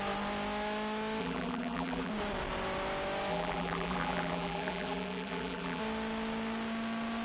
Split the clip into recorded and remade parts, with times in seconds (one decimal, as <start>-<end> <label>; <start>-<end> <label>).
0.0-1.2 recorded; 1.2-2.1 remade; 2.1-3.3 recorded; 3.3-5.8 remade; 5.8-7.2 recorded